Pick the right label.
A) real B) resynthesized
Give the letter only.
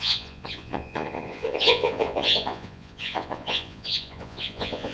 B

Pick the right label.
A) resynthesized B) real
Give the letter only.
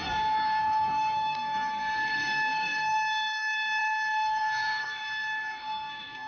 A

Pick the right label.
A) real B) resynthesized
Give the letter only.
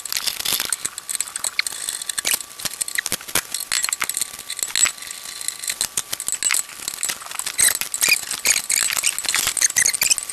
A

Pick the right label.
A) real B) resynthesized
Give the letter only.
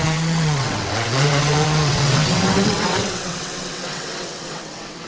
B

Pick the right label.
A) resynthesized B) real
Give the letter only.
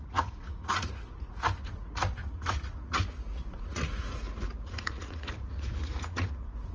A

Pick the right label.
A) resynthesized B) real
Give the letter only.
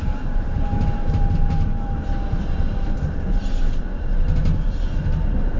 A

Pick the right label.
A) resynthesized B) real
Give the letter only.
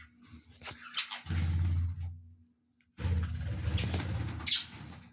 B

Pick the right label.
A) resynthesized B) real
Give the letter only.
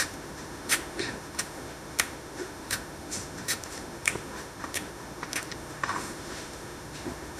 A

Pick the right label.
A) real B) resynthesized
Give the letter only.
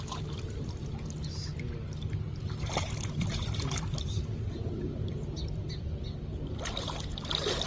A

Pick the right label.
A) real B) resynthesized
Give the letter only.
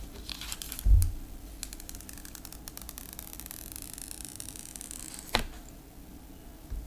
A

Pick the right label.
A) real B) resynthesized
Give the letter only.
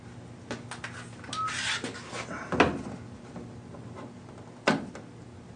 A